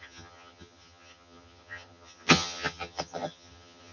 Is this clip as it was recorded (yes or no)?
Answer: no